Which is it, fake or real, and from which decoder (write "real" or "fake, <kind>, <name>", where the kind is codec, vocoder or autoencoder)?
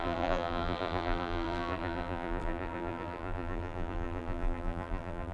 fake, vocoder, BigVGAN v2